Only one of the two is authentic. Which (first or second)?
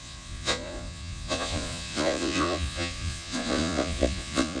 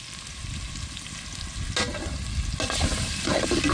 second